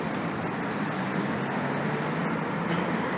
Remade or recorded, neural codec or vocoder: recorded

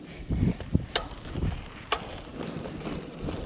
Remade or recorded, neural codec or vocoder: recorded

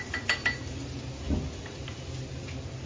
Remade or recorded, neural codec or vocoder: recorded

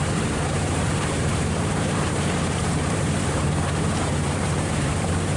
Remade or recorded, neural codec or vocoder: remade, vocoder, BigVGAN v2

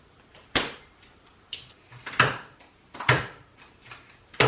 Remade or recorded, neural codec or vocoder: remade, vocoder, BigVGAN v2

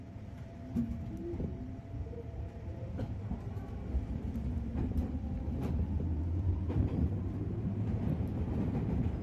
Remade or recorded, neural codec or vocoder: remade, vocoder, BigVGAN v2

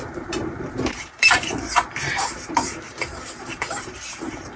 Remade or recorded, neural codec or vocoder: remade, vocoder, BigVGAN v2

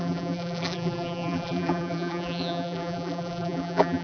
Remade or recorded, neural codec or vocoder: remade, vocoder, BigVGAN v2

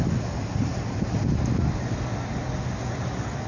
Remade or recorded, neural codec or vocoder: recorded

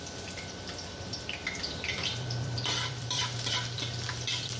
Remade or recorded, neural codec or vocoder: remade, vocoder, BigVGAN v2